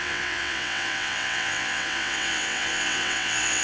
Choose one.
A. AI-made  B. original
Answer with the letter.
A